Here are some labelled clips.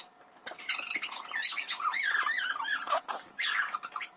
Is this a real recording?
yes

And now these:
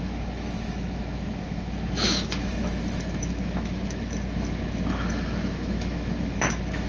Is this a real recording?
no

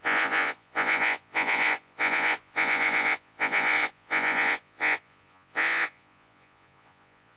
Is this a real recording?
no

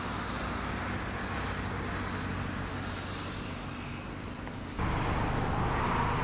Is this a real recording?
yes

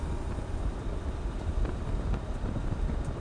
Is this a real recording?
no